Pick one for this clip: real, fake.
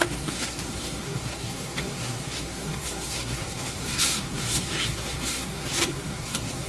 fake